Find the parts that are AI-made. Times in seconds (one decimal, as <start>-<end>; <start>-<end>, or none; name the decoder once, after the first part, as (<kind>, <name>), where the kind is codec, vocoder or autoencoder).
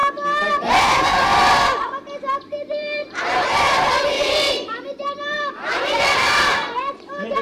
0.8-1.3 (vocoder, BigVGAN v2); 2.0-7.4